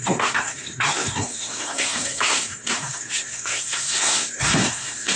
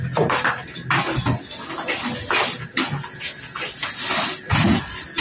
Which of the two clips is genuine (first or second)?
second